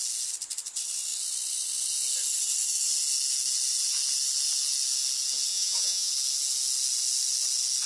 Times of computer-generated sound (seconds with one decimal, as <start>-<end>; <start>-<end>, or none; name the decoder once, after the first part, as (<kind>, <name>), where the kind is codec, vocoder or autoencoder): 5.5-6.1 (vocoder, Vocos)